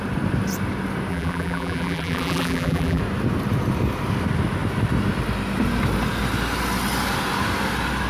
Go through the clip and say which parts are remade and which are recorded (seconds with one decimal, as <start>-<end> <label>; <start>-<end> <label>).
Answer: 0.0-1.1 recorded; 1.1-3.0 remade; 3.0-8.1 recorded